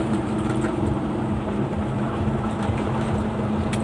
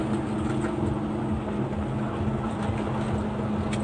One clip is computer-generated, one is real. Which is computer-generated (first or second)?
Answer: first